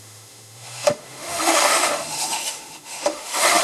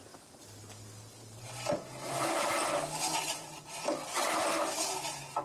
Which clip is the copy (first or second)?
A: first